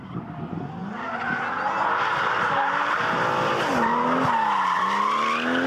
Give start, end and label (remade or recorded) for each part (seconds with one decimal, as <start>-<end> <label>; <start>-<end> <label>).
0.0-5.7 recorded